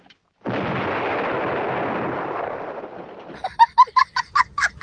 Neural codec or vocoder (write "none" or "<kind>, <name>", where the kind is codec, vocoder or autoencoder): none